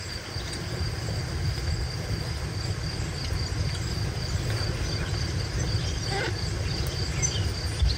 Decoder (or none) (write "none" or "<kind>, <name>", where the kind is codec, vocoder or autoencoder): none